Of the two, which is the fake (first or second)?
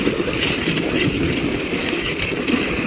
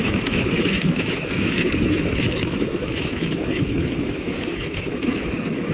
second